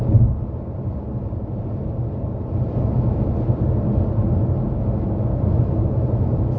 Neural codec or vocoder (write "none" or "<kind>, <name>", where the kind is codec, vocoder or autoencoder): none